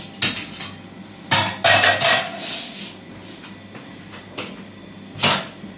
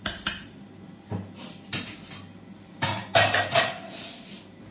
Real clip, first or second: first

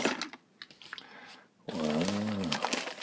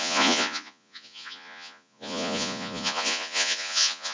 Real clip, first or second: first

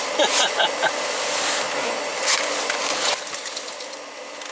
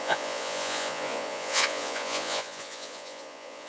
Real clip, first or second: first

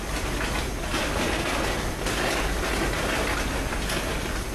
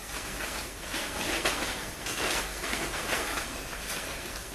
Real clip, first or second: first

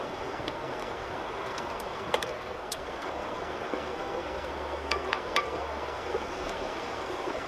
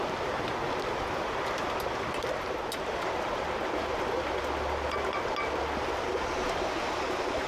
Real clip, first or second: second